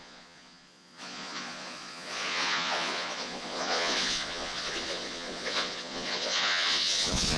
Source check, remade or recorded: remade